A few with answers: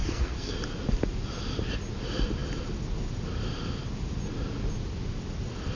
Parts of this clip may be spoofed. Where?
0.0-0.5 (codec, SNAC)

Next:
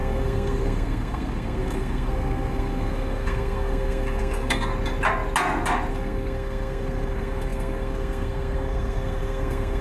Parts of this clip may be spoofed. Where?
0.0-4.7 (codec, SNAC); 5.9-9.8

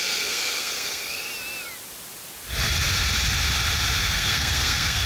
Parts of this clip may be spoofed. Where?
0.0-1.3 (codec, SNAC); 4.0-5.1

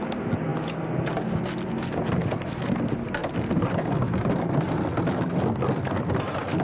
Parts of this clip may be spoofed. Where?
none

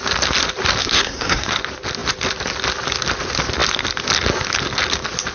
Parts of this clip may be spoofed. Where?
0.8-1.5 (codec, SNAC)

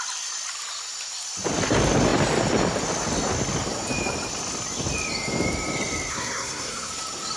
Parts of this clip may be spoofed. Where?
6.1-6.9 (codec, SNAC)

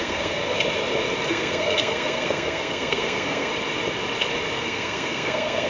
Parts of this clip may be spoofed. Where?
0.0-0.4 (codec, SNAC); 1.3-3.5; 4.6-5.7

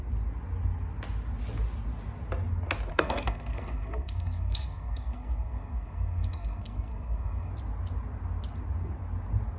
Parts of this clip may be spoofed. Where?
2.9-7.5 (codec, SNAC)